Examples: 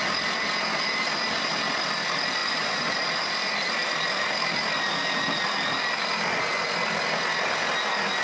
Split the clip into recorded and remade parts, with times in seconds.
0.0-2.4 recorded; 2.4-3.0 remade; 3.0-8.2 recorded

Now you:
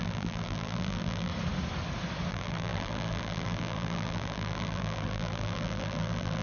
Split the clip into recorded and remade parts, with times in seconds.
0.0-1.3 remade; 1.3-2.3 recorded; 2.3-6.4 remade

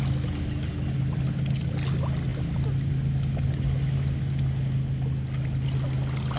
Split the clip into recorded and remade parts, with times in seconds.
0.0-6.4 recorded

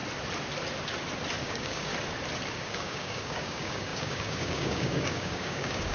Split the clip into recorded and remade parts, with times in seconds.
0.0-1.4 recorded; 1.4-1.9 remade; 1.9-2.5 recorded; 2.5-5.9 remade

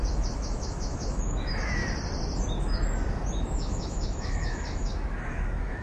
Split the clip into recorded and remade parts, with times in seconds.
0.0-1.8 remade; 1.8-3.3 recorded; 3.3-5.8 remade